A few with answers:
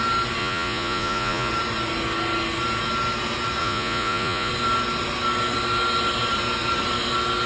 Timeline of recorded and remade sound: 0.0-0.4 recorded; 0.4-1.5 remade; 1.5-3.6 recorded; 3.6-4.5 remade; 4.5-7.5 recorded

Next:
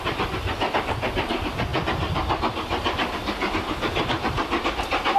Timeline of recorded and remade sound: 0.0-5.2 recorded

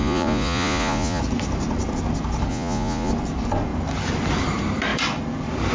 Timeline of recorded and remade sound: 0.0-1.2 remade; 1.2-2.5 recorded; 2.5-3.1 remade; 3.1-5.7 recorded

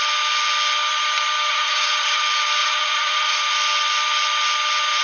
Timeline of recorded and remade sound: 0.0-1.5 recorded; 1.5-2.2 remade; 2.2-2.6 recorded; 2.6-3.4 remade; 3.4-5.0 recorded

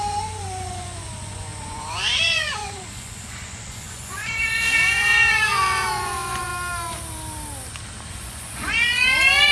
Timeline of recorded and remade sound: 0.0-6.5 remade; 6.5-8.1 recorded; 8.1-9.5 remade

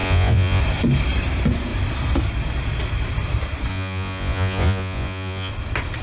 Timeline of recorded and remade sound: 0.0-0.6 remade; 0.6-3.7 recorded; 3.7-5.5 remade; 5.5-6.0 recorded

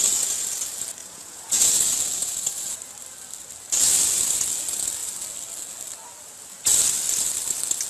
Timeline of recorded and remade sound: 0.0-1.0 recorded; 1.0-1.7 remade; 1.7-2.2 recorded; 2.2-2.8 remade; 2.8-7.9 recorded